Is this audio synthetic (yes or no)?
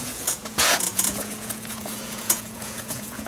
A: yes